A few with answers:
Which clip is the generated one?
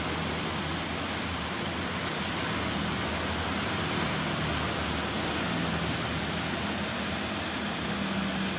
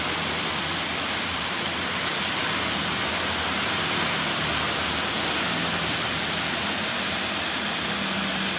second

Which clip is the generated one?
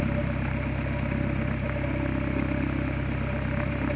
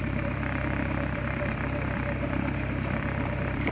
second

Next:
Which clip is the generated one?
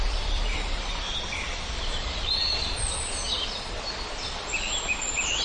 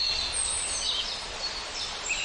first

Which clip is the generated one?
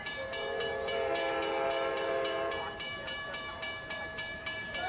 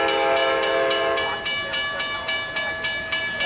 first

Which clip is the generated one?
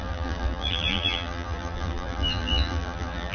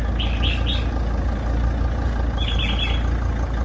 first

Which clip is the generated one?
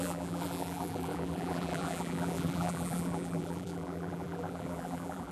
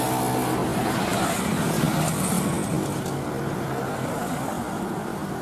first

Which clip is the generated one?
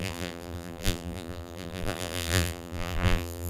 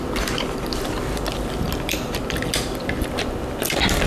first